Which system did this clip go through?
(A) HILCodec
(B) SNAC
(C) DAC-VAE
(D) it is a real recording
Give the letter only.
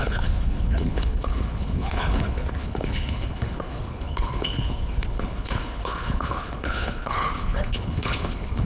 A